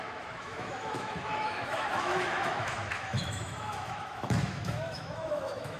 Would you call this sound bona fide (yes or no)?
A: no